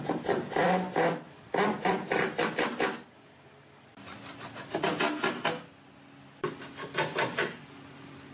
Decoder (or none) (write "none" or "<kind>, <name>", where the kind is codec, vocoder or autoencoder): none